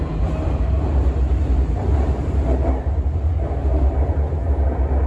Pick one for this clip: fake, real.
fake